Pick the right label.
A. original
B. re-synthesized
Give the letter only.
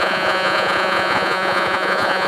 B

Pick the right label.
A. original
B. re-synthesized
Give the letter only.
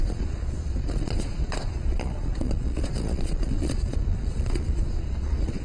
B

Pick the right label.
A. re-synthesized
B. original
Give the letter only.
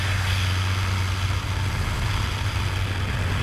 B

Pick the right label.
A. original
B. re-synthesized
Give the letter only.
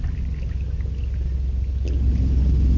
A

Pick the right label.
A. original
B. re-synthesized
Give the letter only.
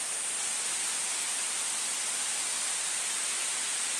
A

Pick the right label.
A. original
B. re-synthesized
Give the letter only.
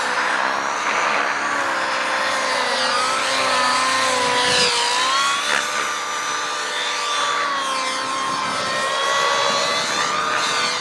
A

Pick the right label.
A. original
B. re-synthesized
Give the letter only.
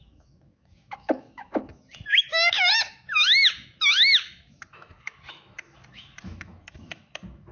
B